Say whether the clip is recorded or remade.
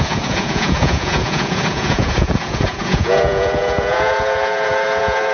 remade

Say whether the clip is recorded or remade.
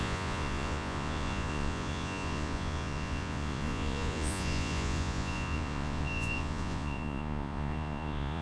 remade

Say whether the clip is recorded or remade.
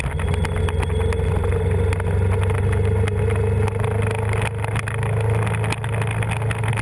recorded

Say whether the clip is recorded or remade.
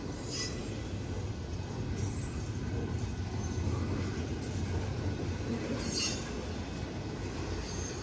recorded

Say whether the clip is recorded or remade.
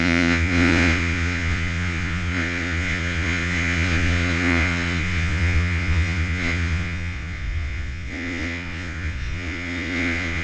remade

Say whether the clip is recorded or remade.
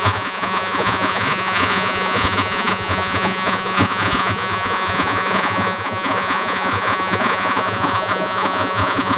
remade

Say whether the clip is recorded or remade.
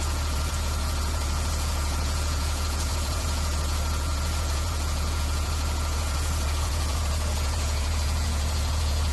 remade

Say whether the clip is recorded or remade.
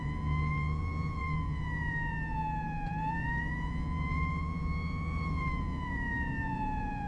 remade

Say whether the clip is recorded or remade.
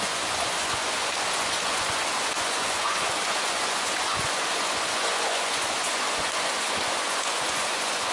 remade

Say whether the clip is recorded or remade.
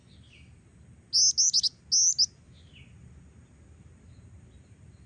recorded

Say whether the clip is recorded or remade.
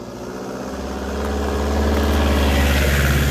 recorded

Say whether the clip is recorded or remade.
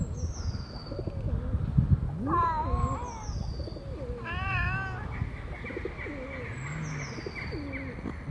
recorded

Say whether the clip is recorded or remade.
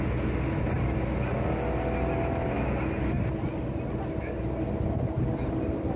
recorded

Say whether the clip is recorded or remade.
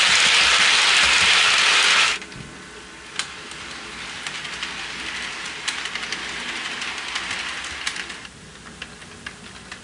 recorded